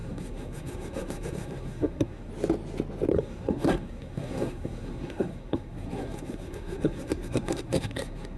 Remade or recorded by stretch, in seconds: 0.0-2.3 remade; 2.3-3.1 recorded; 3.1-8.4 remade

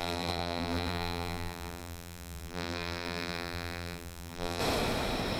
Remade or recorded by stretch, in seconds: 0.0-4.6 remade; 4.6-5.4 recorded